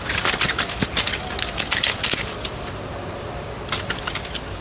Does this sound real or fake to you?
real